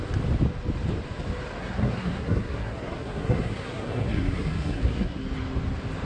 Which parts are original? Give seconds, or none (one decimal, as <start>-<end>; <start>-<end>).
0.0-1.6; 5.2-6.1